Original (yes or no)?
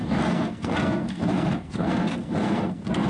no